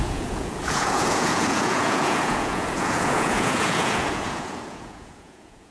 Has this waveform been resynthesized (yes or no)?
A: yes